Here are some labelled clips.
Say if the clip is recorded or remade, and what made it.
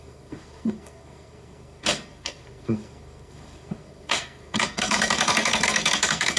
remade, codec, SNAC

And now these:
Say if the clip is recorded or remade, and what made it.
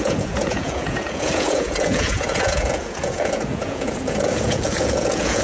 remade, vocoder, Vocos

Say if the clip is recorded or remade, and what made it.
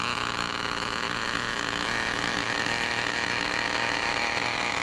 remade, autoencoder, DAC-VAE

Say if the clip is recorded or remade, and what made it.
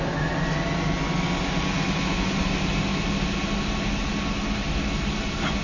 recorded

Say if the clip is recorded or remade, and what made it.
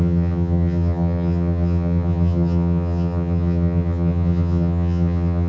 remade, vocoder, HiFi-GAN